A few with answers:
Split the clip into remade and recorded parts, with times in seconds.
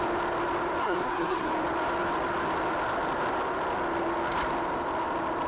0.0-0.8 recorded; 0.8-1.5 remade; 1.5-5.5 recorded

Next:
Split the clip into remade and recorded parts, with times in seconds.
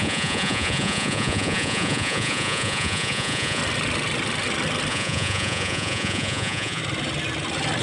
0.0-3.6 remade; 3.6-4.9 recorded; 4.9-6.8 remade; 6.8-7.8 recorded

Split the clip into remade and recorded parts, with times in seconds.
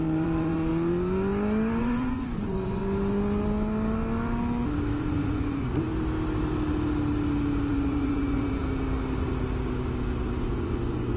0.0-0.7 remade; 0.7-1.8 recorded; 1.8-2.8 remade; 2.8-5.0 recorded; 5.0-5.9 remade; 5.9-7.7 recorded; 7.7-8.6 remade; 8.6-10.4 recorded; 10.4-11.2 remade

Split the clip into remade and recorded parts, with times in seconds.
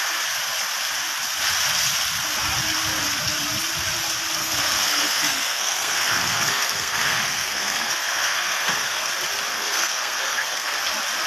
0.0-4.4 recorded; 4.4-9.1 remade; 9.1-9.5 recorded; 9.5-10.8 remade; 10.8-11.3 recorded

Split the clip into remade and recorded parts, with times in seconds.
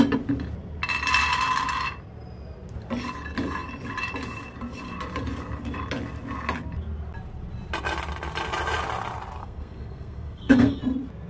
0.0-9.4 recorded; 9.4-10.8 remade; 10.8-11.3 recorded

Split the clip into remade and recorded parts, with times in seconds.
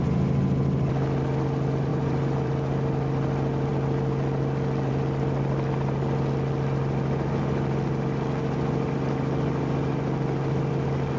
0.0-1.9 recorded; 1.9-2.5 remade; 2.5-11.2 recorded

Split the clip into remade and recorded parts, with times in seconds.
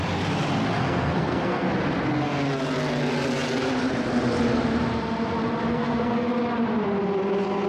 0.0-0.8 recorded; 0.8-1.7 remade; 1.7-5.7 recorded; 5.7-6.3 remade; 6.3-7.7 recorded